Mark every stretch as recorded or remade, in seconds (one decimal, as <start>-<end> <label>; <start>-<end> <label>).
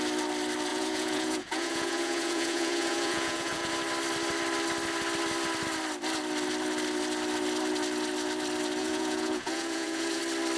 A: 0.0-0.7 recorded; 0.7-3.7 remade; 3.7-8.8 recorded; 8.8-10.2 remade; 10.2-10.6 recorded